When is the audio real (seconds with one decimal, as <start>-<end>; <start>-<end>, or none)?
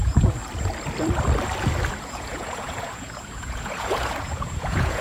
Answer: 0.4-1.9